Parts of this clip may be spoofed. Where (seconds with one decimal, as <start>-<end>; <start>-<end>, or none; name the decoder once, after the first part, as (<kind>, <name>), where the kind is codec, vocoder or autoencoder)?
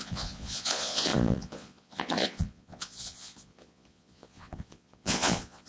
0.0-5.7 (vocoder, Vocos)